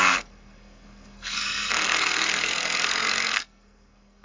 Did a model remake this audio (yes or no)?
yes